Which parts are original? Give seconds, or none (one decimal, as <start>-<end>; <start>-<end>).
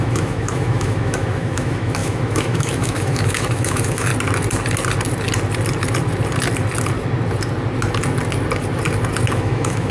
4.1-9.3